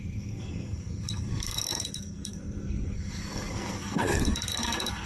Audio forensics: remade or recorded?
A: remade